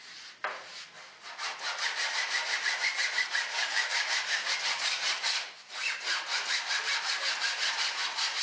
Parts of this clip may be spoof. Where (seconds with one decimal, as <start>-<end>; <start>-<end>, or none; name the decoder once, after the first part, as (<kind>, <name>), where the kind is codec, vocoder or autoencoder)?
3.5-4.5 (codec, DAC)